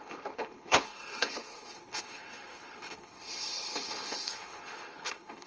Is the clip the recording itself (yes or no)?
no